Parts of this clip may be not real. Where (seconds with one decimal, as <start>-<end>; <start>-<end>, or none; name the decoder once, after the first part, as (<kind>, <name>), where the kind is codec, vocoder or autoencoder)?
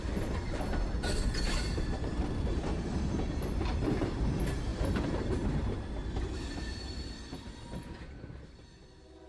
2.1-2.9 (vocoder, BigVGAN v2); 4.7-7.1